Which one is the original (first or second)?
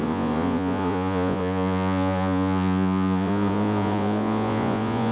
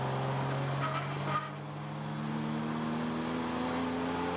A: second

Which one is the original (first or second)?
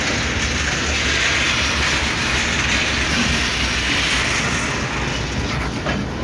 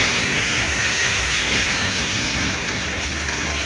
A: first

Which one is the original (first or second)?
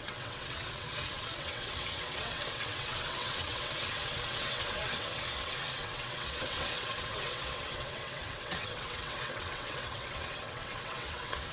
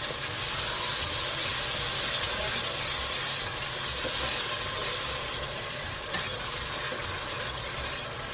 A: second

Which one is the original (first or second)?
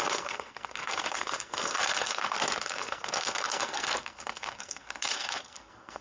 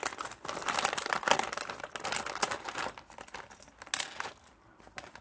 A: second